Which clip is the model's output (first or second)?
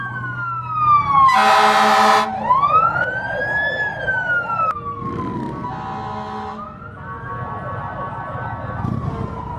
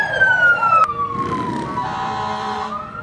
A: second